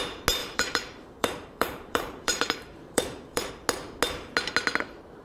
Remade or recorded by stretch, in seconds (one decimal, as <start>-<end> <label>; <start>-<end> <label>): 0.0-0.4 recorded; 0.4-3.5 remade; 3.5-5.2 recorded